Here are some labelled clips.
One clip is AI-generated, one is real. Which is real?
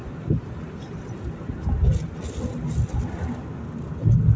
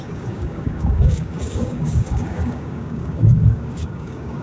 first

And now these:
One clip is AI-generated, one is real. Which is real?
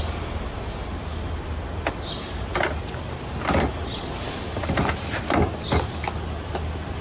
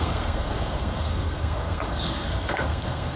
first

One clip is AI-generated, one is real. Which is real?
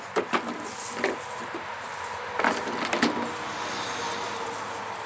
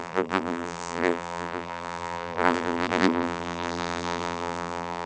first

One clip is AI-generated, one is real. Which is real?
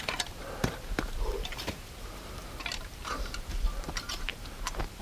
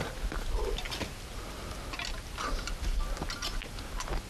second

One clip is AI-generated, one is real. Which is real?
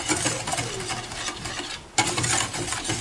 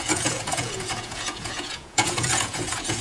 first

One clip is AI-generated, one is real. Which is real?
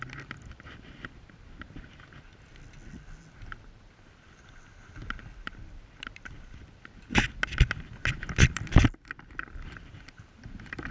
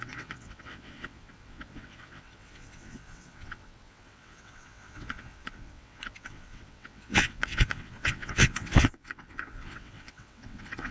first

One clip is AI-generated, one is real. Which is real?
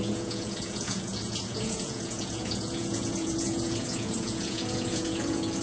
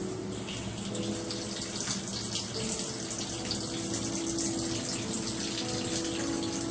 second